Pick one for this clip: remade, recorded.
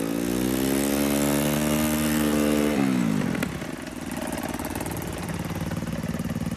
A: recorded